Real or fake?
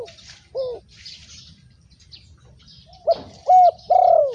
real